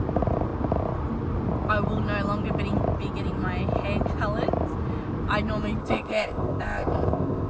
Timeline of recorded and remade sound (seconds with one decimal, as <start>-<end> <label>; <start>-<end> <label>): 0.0-5.8 recorded; 5.8-7.5 remade